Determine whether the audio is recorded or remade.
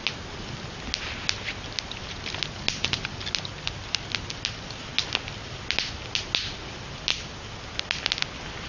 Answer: recorded